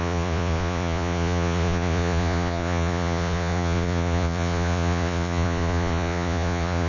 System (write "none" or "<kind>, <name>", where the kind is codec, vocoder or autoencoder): vocoder, Vocos